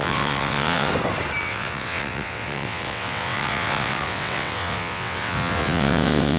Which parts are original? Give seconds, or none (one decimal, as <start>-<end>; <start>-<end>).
0.9-1.4